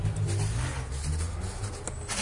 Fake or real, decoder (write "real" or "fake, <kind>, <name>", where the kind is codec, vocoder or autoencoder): real